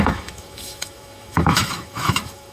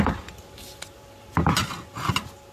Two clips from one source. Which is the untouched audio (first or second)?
second